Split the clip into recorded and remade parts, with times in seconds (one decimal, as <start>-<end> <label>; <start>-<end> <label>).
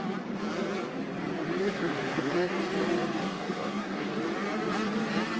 0.0-1.6 recorded; 1.6-2.5 remade; 2.5-3.2 recorded; 3.2-4.1 remade; 4.1-5.4 recorded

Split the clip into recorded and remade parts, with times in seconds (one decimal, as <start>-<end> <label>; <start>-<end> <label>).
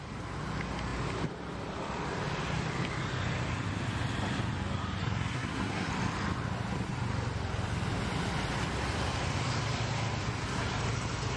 0.0-5.0 recorded; 5.0-5.9 remade; 5.9-11.4 recorded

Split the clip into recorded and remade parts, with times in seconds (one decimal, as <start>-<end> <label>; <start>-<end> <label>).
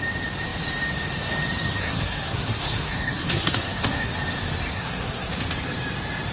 0.0-1.8 recorded; 1.8-4.1 remade; 4.1-4.7 recorded; 4.7-5.3 remade; 5.3-6.3 recorded